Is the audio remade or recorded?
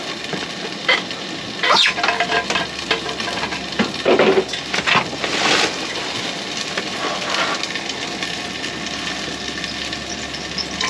recorded